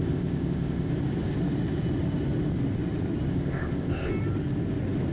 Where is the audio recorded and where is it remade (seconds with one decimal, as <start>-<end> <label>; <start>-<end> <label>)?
0.0-0.9 remade; 0.9-3.3 recorded; 3.3-4.1 remade; 4.1-5.1 recorded